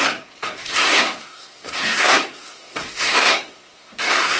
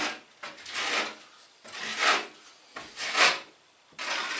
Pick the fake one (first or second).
first